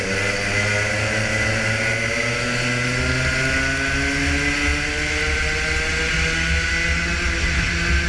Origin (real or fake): real